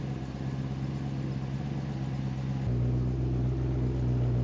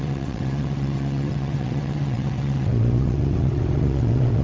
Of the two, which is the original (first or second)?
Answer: first